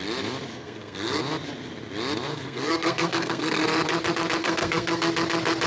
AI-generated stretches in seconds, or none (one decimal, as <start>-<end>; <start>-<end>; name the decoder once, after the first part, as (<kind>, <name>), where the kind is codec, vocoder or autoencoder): 0.5-1.2 (codec, SNAC); 2.3-3.6; 4.4-5.1